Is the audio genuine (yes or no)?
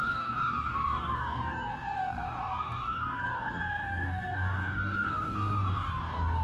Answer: no